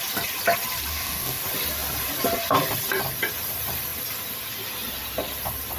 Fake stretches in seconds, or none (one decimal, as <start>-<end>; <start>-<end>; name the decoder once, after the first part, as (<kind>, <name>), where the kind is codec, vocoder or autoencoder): 0.9-1.4 (codec, DAC)